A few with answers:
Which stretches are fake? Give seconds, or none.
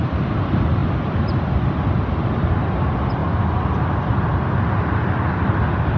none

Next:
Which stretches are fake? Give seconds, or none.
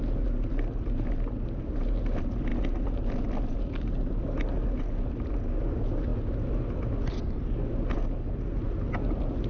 none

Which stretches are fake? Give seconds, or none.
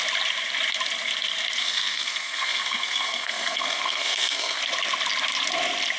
1.6-4.6 (codec, SNAC)